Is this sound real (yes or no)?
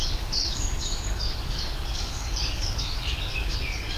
no